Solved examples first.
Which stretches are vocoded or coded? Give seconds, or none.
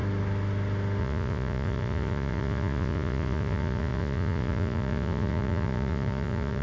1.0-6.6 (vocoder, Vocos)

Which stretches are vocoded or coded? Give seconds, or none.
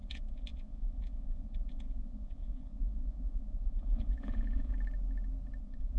0.0-4.7 (vocoder, Vocos); 5.6-6.0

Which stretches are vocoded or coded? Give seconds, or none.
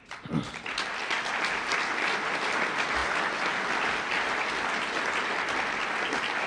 none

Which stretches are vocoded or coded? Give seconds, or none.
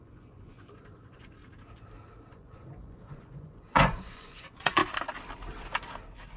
0.0-1.4 (vocoder, Vocos); 2.3-4.8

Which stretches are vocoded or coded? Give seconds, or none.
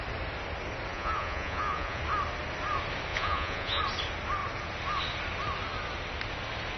0.9-2.0 (vocoder, Vocos); 3.1-3.8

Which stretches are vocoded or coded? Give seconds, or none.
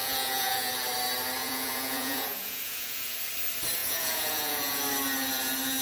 0.0-0.7 (vocoder, Vocos); 1.4-3.3; 3.8-4.8